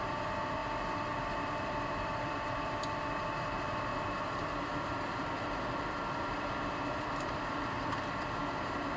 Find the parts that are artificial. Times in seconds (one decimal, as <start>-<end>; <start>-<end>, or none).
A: 3.9-8.4